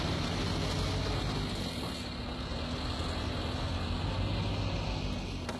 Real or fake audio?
real